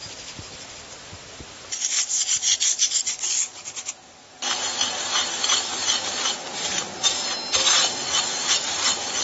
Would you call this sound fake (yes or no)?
no